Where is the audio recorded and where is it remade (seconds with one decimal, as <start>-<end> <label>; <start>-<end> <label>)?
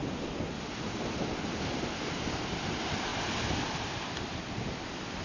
0.0-3.1 recorded; 3.1-4.4 remade; 4.4-5.2 recorded